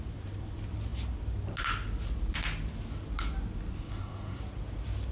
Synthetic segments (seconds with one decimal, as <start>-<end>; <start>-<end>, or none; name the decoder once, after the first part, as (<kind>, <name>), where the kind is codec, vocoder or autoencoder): 3.9-4.4 (codec, SNAC)